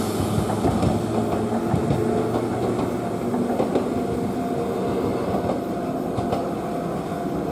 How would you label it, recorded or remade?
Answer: recorded